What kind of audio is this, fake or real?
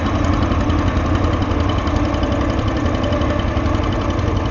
real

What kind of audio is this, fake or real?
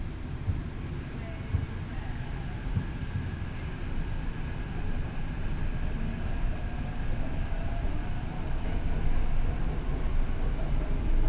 real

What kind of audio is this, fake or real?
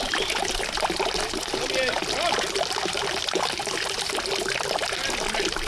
real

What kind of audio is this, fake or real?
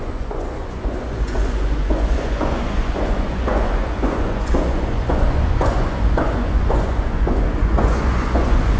fake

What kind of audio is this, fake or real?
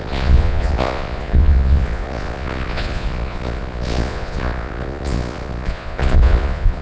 fake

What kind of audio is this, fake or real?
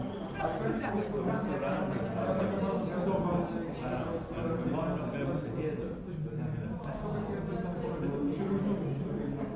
real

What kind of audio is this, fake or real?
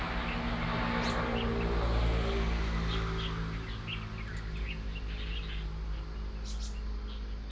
real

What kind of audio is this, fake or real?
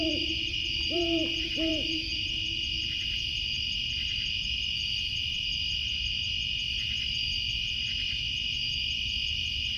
fake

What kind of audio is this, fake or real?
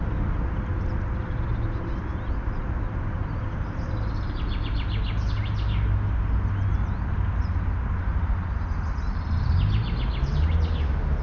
real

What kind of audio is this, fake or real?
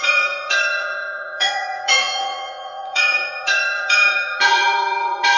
fake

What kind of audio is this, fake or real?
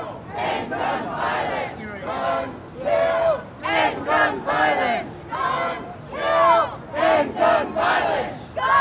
real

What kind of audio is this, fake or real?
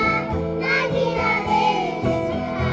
real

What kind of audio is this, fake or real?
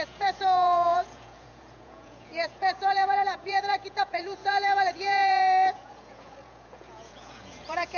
fake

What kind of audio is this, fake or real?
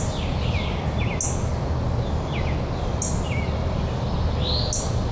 real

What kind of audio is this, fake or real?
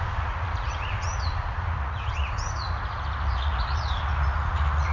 fake